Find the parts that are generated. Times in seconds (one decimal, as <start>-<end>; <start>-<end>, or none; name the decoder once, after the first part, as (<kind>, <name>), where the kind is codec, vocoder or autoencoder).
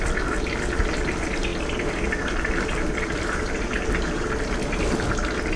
none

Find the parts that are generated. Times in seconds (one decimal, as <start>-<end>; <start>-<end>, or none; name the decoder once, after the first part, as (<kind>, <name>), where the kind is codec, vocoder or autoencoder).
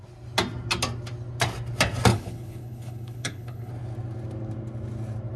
2.1-3.7 (codec, HILCodec)